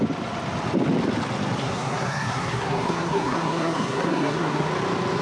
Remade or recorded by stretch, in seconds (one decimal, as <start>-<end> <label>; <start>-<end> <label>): 0.0-1.6 recorded; 1.6-4.7 remade; 4.7-5.2 recorded